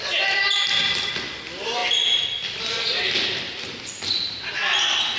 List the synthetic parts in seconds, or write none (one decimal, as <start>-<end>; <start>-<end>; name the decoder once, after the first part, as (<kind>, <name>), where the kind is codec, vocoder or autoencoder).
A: none